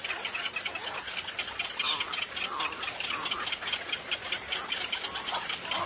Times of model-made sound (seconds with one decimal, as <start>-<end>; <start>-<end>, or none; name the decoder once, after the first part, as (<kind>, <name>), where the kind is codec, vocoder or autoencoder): none